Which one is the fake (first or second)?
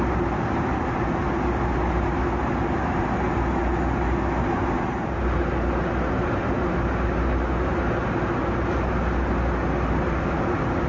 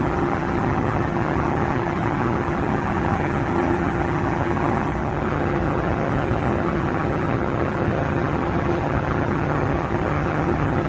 second